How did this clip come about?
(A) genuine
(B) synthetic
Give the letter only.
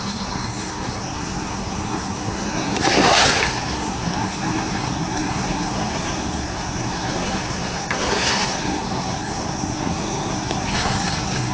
B